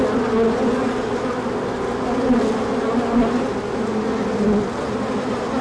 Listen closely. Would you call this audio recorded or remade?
recorded